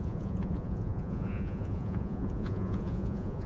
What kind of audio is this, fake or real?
fake